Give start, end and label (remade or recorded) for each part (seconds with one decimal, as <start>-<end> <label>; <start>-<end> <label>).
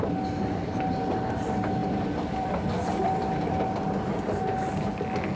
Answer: 0.0-1.8 recorded; 1.8-2.5 remade; 2.5-5.4 recorded